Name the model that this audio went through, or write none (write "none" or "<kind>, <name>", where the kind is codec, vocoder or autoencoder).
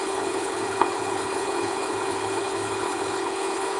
codec, HILCodec